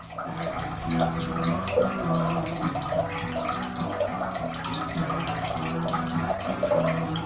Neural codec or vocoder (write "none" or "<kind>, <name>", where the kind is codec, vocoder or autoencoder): none